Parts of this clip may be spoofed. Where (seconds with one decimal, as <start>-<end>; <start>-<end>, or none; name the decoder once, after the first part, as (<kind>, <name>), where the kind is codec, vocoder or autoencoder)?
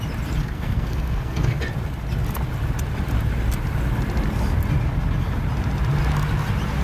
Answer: 0.4-1.6 (codec, SNAC)